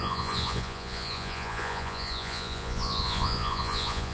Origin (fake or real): fake